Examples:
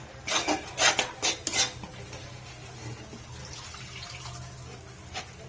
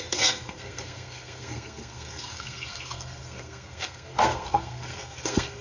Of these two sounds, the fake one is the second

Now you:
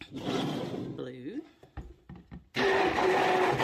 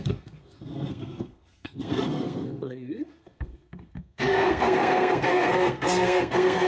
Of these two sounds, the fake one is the second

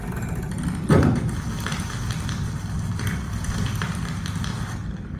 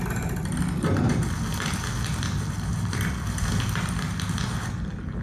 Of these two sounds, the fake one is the first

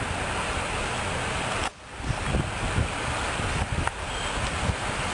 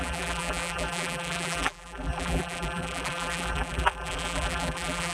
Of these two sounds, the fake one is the second